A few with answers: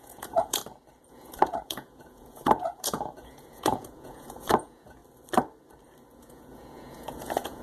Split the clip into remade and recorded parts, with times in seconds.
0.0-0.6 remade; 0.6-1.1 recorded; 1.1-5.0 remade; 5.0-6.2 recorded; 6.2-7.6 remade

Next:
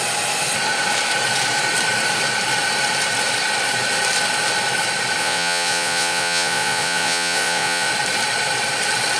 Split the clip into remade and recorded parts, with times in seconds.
0.0-5.2 recorded; 5.2-7.9 remade; 7.9-9.2 recorded